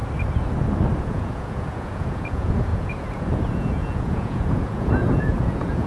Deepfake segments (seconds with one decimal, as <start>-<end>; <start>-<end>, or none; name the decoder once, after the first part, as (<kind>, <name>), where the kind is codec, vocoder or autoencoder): 1.0-5.9 (vocoder, Vocos)